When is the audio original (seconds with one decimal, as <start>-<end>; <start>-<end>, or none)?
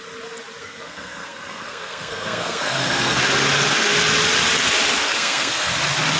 0.0-0.6; 3.2-5.0; 5.7-6.2